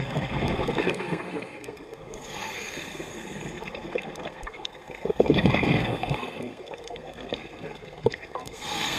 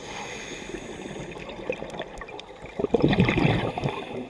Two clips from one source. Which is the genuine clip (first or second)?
second